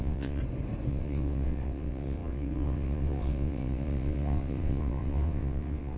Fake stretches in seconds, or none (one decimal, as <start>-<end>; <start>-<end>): 0.0-0.4; 0.9-6.0